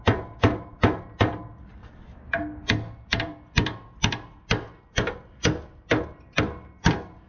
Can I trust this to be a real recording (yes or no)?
yes